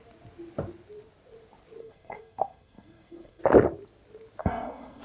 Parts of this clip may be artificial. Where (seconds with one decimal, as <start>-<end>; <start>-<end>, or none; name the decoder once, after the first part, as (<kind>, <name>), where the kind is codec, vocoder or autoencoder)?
1.8-3.4 (codec, SNAC); 4.4-5.0